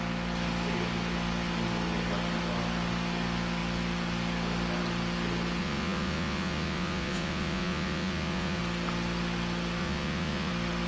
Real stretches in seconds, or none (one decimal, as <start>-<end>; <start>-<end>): 0.0-5.6; 8.6-9.8; 10.5-10.9